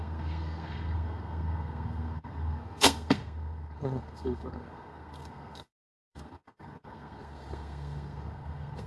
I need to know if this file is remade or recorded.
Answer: remade